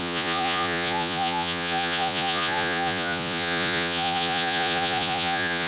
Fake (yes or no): yes